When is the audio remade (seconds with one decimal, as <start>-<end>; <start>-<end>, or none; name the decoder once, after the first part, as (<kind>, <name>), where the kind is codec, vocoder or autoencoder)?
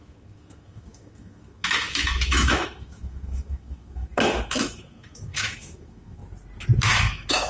0.0-6.2 (autoencoder, DAC-VAE); 6.8-7.5